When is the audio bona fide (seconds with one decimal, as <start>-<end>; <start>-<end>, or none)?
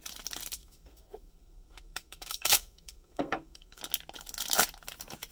0.0-0.6; 3.8-5.3